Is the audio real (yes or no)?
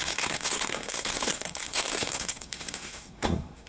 no